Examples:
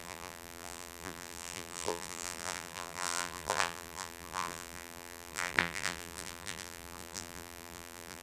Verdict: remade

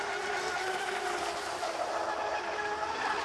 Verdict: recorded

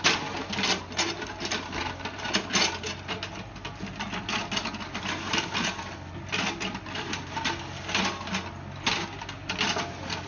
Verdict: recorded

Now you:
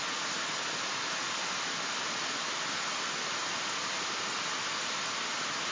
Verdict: recorded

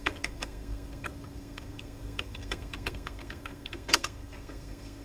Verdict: remade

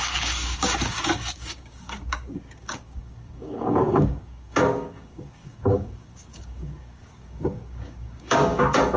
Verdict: remade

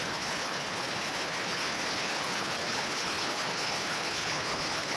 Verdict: remade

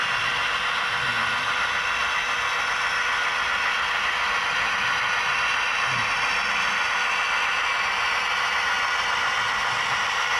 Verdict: recorded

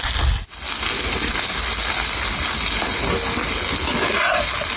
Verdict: recorded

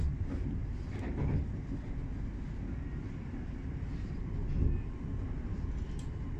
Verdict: recorded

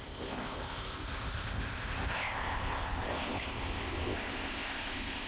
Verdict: remade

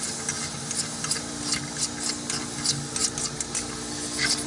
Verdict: recorded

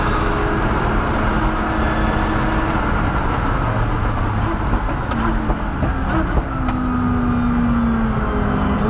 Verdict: recorded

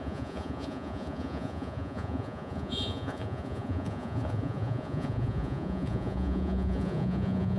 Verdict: remade